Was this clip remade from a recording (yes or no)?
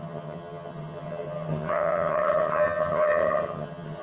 yes